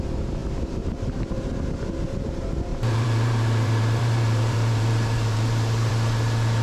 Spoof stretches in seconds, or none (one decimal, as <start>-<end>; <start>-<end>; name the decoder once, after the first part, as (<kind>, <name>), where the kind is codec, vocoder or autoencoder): 2.7-5.9 (vocoder, BigVGAN v2)